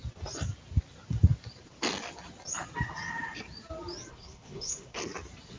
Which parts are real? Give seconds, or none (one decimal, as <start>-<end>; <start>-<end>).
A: 0.0-4.1; 5.0-5.6